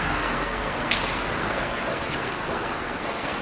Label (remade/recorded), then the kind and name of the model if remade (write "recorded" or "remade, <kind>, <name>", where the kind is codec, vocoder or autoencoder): remade, codec, SNAC